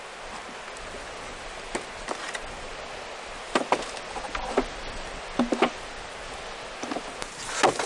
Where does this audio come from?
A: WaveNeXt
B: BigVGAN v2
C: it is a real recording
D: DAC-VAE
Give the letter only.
C